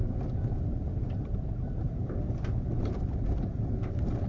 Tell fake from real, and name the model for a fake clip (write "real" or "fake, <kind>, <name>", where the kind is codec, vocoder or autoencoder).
fake, vocoder, BigVGAN v2